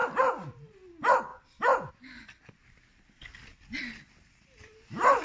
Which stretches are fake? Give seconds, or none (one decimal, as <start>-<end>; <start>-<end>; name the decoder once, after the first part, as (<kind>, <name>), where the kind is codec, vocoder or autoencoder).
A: 0.0-0.7 (vocoder, BigVGAN v2); 2.9-5.2